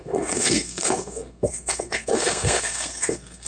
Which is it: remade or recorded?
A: remade